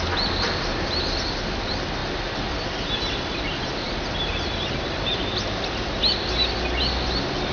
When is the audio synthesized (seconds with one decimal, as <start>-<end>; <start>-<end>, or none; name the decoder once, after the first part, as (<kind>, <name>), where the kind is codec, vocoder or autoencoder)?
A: none